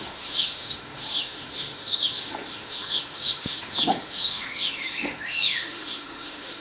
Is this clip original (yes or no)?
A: no